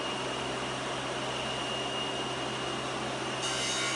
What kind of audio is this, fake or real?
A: real